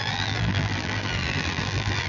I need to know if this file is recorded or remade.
remade